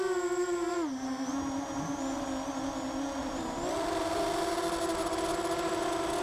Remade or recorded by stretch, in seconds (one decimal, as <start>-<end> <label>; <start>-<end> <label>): 0.0-3.2 recorded; 3.2-4.2 remade; 4.2-6.2 recorded